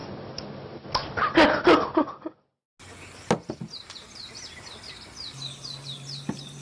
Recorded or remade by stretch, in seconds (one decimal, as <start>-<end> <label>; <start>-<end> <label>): 0.0-6.6 recorded